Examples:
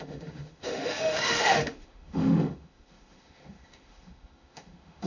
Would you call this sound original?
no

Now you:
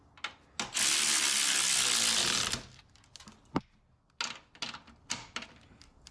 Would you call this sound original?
yes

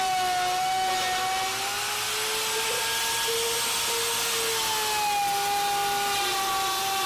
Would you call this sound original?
yes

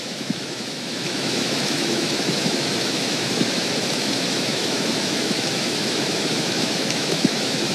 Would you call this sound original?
no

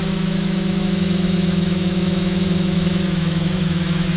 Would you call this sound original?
no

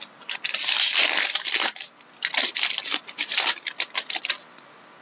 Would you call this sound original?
yes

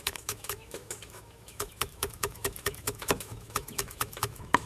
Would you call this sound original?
no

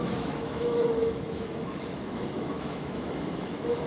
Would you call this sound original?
no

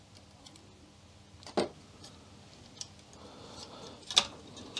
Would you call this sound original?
yes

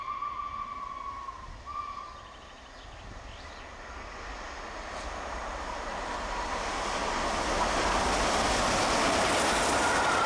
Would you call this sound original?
yes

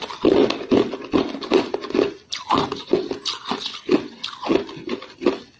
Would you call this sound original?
yes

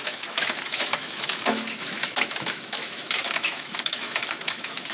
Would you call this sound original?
no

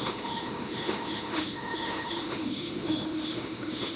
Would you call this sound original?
no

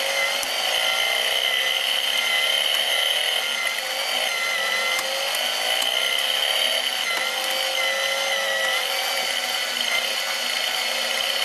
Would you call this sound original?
yes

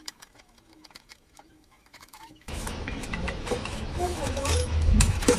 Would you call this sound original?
no